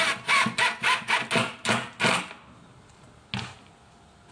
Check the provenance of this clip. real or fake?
real